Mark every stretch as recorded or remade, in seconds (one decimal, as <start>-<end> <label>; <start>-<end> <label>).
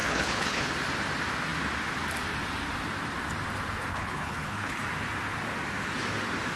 0.0-0.7 remade; 0.7-3.9 recorded; 3.9-4.8 remade; 4.8-6.6 recorded